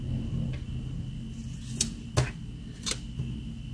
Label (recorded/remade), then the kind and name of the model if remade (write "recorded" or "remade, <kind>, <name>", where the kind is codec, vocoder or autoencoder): recorded